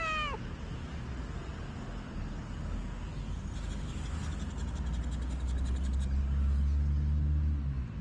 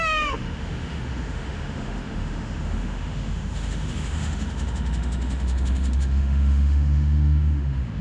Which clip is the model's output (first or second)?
second